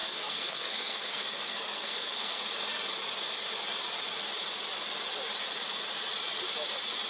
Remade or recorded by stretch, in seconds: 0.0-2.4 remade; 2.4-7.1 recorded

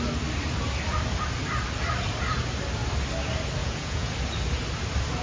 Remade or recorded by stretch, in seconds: 0.0-3.6 recorded; 3.6-4.1 remade; 4.1-5.2 recorded

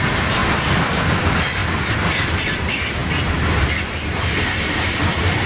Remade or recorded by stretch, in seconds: 0.0-3.0 remade; 3.0-5.0 recorded; 5.0-5.5 remade

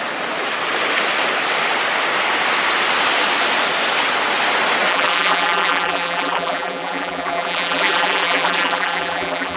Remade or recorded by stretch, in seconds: 0.0-4.9 recorded; 4.9-9.6 remade

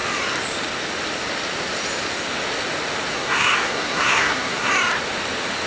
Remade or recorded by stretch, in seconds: 0.0-3.1 recorded; 3.1-4.7 remade; 4.7-5.7 recorded

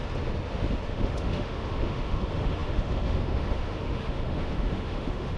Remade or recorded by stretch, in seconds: 0.0-0.9 recorded; 0.9-5.4 remade

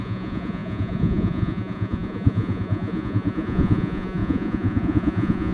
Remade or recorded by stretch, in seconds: 0.0-5.5 remade